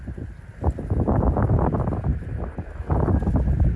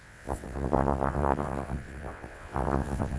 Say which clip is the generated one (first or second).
second